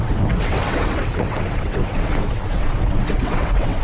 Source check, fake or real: fake